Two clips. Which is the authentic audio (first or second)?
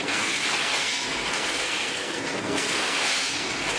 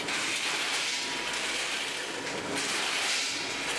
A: second